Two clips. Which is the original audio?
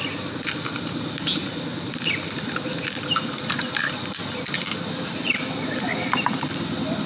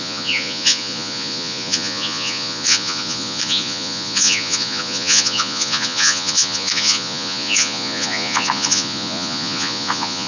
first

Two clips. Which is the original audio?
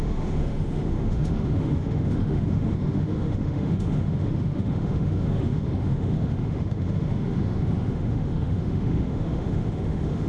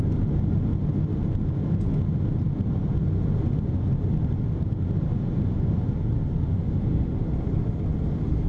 second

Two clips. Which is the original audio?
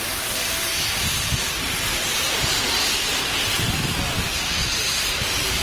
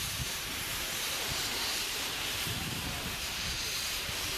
first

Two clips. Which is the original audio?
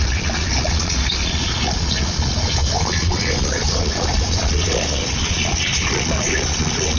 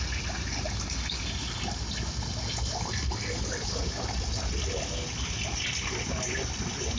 second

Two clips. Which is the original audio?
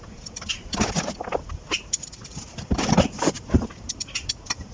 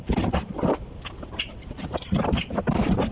first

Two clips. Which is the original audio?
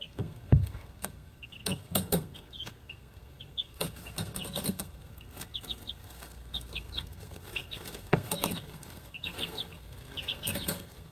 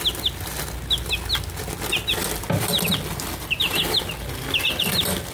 second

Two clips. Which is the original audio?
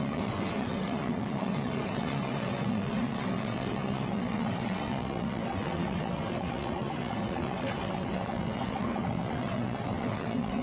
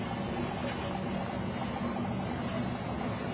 second